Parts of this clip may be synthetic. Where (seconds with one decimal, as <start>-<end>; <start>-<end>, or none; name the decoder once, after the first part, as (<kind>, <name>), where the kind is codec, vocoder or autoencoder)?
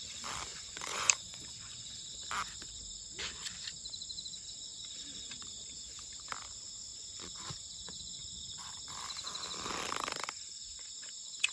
0.5-1.9 (vocoder, Vocos); 6.9-8.4